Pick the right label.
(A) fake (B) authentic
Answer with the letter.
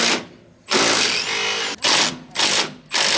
B